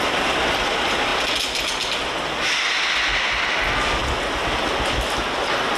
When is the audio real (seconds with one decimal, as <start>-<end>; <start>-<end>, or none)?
0.0-5.8